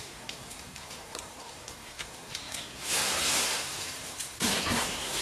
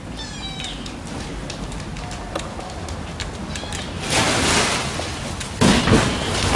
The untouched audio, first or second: second